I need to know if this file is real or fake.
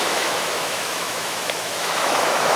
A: fake